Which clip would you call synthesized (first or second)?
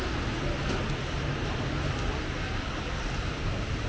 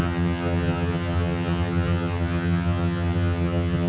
second